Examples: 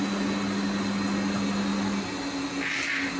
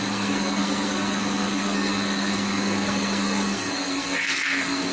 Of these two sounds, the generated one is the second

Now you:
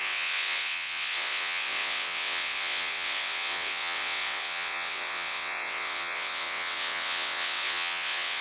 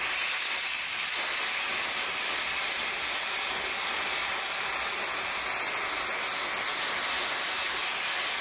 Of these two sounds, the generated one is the first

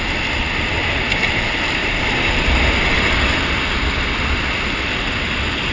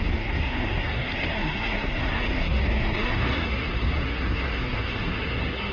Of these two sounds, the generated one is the second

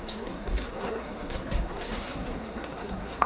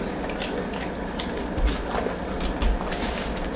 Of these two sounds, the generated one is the first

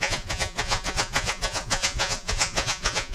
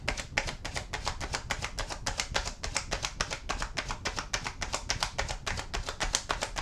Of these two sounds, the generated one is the first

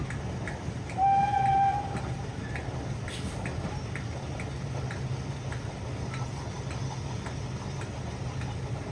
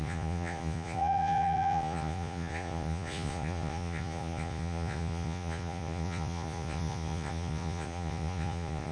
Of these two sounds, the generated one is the second